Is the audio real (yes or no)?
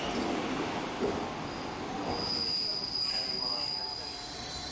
yes